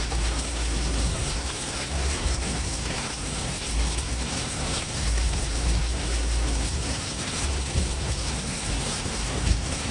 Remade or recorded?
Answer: remade